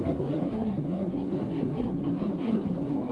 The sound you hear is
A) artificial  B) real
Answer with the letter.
A